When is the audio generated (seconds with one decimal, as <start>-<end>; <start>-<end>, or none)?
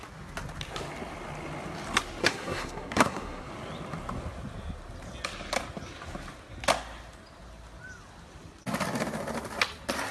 2.2-3.5